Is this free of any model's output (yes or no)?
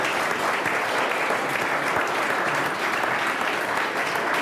yes